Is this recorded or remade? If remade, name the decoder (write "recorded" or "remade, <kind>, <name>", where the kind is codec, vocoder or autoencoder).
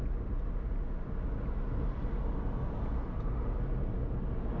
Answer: recorded